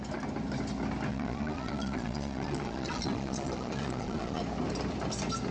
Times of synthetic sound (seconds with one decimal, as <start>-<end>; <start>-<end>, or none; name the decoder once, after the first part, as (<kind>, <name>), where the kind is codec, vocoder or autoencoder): 1.1-4.4 (vocoder, Vocos)